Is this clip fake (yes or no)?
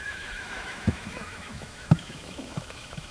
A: yes